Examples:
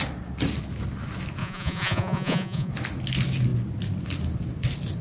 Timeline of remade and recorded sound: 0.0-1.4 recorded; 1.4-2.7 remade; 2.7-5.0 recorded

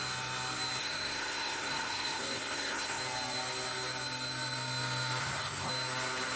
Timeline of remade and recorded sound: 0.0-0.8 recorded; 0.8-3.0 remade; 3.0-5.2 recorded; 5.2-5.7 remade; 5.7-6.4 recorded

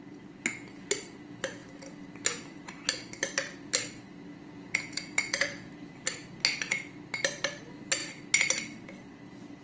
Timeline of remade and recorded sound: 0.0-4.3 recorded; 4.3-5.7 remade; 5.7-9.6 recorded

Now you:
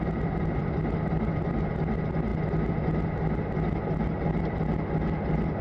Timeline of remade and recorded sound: 0.0-5.6 recorded

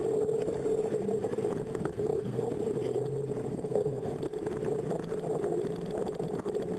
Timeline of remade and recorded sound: 0.0-1.7 recorded; 1.7-2.5 remade; 2.5-3.5 recorded; 3.5-4.2 remade; 4.2-6.8 recorded

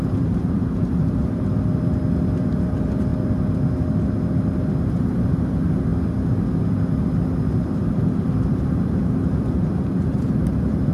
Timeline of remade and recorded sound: 0.0-1.5 remade; 1.5-2.5 recorded; 2.5-3.1 remade; 3.1-5.0 recorded; 5.0-5.9 remade; 5.9-7.6 recorded; 7.6-10.9 remade

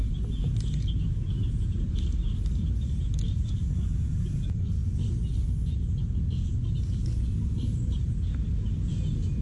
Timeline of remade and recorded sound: 0.0-3.6 remade; 3.6-4.3 recorded; 4.3-4.8 remade; 4.8-9.4 recorded

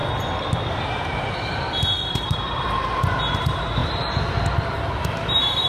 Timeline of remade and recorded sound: 0.0-3.4 recorded; 3.4-5.7 remade